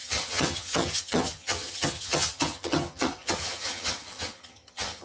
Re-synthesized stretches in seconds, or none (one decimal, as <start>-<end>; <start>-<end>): 0.0-5.0